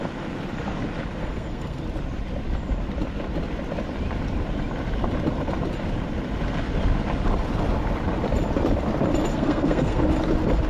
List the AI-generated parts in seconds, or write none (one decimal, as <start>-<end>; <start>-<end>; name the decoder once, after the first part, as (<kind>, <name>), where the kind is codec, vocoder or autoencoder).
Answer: 1.2-1.8 (codec, SNAC); 9.3-10.0